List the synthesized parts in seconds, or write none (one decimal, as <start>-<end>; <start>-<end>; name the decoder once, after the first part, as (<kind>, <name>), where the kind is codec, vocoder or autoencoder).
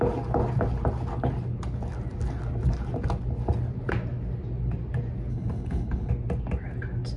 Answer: 5.3-6.1 (codec, HILCodec)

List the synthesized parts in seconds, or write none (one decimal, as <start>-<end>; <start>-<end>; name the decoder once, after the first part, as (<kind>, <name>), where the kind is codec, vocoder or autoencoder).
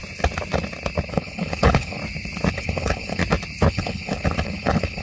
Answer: 1.1-2.0 (codec, HILCodec); 2.5-3.2; 3.7-5.0